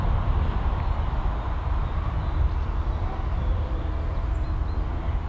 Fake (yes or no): no